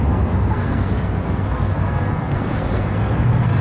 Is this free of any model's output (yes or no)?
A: no